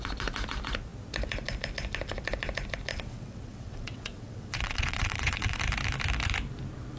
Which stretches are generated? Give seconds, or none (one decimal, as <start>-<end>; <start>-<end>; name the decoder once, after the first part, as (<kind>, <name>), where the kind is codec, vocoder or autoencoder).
2.9-5.6 (vocoder, WaveNeXt)